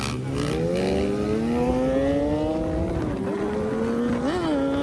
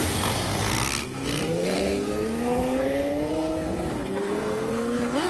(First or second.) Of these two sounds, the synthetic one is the second